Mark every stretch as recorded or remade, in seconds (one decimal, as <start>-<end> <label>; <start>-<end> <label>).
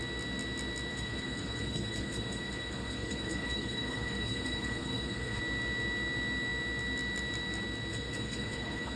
0.0-0.9 recorded; 0.9-5.4 remade; 5.4-7.9 recorded; 7.9-9.0 remade